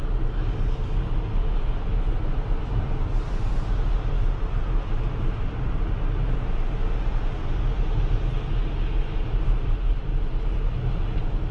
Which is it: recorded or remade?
recorded